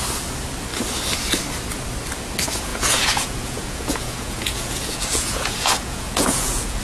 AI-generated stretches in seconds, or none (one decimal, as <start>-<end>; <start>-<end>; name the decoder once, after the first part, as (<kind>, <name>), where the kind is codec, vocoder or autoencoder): 2.7-6.8 (vocoder, Vocos)